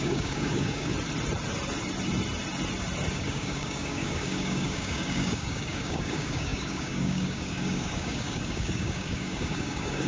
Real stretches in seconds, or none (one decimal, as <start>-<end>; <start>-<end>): 0.9-3.1